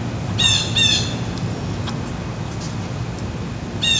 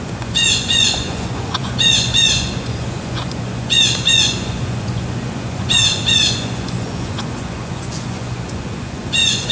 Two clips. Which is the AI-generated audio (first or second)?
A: second